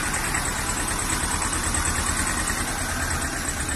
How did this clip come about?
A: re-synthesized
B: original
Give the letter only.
B